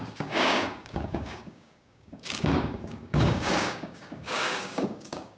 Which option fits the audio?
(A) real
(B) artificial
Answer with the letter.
B